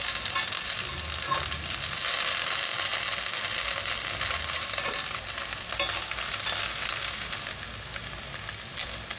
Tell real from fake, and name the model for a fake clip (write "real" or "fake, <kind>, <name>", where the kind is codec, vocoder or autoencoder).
real